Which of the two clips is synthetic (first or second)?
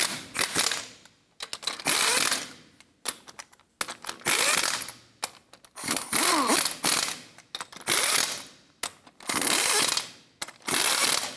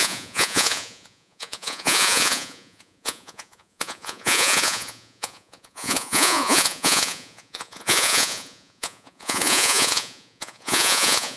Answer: second